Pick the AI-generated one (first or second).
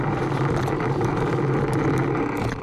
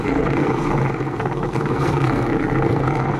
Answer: second